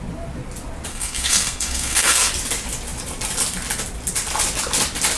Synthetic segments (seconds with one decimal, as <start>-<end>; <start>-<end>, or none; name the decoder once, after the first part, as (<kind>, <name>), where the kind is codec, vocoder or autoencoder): 0.9-2.3 (codec, SNAC)